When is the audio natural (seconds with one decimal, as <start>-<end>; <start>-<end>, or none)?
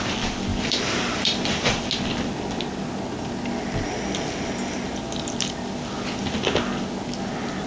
0.0-0.5; 1.9-7.7